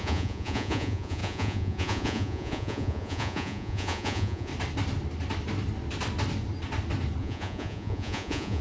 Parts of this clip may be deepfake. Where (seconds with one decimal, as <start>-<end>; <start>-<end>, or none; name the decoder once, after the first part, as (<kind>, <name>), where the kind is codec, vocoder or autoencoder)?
0.0-4.5 (vocoder, Vocos); 7.2-8.6